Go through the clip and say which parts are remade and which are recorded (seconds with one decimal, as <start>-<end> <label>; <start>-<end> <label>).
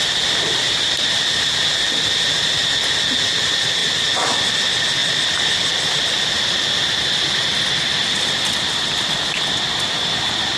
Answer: 0.0-10.6 recorded